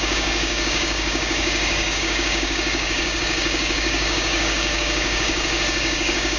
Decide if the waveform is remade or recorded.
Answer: remade